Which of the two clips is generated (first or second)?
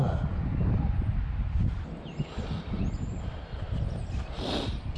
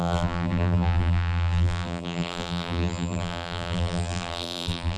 second